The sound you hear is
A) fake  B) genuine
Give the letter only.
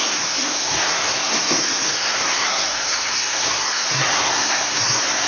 A